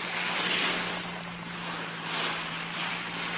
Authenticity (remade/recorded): recorded